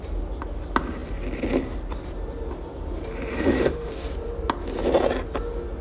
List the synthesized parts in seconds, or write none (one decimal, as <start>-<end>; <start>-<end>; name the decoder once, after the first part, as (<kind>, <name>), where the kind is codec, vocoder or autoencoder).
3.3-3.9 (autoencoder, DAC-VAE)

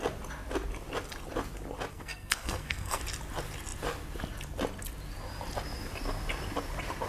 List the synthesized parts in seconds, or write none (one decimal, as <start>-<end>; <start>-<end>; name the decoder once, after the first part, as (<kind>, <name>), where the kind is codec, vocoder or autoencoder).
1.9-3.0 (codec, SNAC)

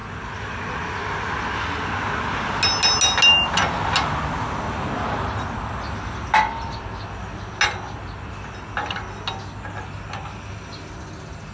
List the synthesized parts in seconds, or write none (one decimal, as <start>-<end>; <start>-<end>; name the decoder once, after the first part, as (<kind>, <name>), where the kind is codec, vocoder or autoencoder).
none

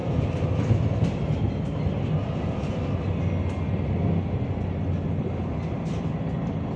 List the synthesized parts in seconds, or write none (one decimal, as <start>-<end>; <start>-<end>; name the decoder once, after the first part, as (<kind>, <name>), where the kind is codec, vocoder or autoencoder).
none